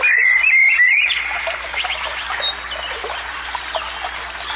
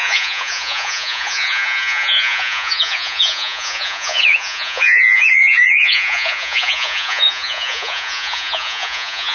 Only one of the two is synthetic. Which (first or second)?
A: second